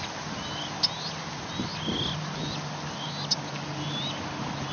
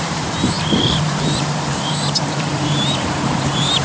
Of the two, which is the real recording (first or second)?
first